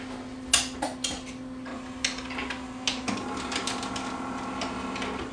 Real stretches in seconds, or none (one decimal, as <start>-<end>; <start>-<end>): 0.0-5.3